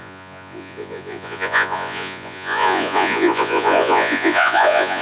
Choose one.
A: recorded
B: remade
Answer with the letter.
B